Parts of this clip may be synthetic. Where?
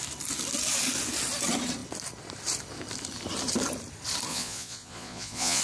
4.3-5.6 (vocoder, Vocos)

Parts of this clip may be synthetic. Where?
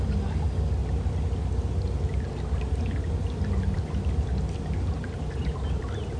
none